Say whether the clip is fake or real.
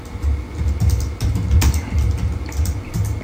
real